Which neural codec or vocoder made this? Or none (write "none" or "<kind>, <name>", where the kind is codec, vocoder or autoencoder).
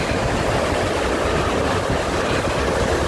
none